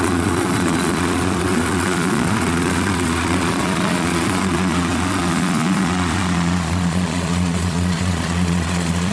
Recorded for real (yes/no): no